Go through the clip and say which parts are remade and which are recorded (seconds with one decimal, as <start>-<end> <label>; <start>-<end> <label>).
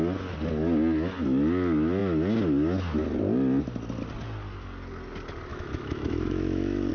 0.0-5.5 recorded; 5.5-6.9 remade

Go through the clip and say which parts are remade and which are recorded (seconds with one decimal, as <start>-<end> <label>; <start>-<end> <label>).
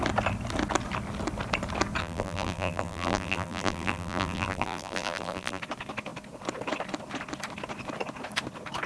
0.0-2.0 recorded; 2.0-5.6 remade; 5.6-8.9 recorded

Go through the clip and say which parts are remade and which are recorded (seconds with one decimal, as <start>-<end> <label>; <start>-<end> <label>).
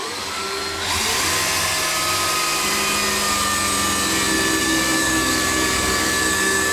0.0-0.6 remade; 0.6-4.6 recorded; 4.6-6.7 remade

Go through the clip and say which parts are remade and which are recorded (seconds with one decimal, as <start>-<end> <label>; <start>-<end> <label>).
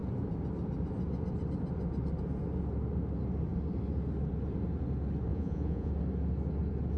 0.0-5.3 recorded; 5.3-5.9 remade; 5.9-7.0 recorded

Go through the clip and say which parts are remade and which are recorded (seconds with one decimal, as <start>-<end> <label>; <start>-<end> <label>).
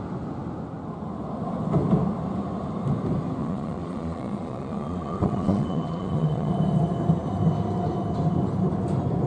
0.0-3.4 recorded; 3.4-6.5 remade; 6.5-9.3 recorded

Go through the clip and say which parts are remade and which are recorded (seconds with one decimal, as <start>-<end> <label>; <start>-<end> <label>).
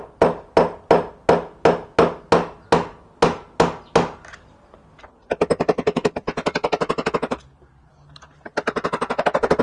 0.0-9.6 recorded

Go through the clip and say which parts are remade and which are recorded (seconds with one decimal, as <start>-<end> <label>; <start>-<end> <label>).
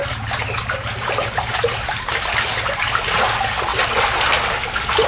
0.0-5.1 recorded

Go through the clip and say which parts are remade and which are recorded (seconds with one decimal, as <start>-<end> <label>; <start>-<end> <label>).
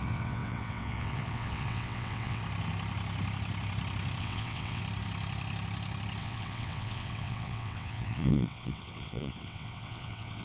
0.0-2.4 remade; 2.4-4.2 recorded; 4.2-4.8 remade; 4.8-6.2 recorded; 6.2-10.4 remade